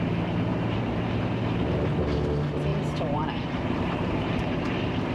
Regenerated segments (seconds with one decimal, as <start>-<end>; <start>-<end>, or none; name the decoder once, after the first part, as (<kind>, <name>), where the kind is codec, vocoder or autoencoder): 0.5-1.1 (vocoder, BigVGAN v2); 2.7-4.4